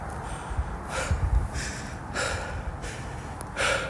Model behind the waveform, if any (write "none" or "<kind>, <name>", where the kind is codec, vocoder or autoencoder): none